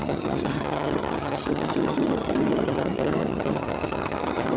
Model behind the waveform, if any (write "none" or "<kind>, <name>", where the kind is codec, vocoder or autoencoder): vocoder, HiFi-GAN